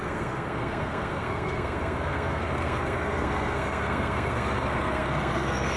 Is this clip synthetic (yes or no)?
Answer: yes